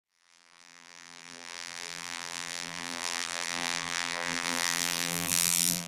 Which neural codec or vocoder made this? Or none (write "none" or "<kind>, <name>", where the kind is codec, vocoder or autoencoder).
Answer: vocoder, BigVGAN v2